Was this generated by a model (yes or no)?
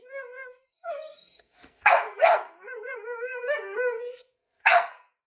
yes